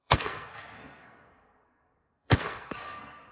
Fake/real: fake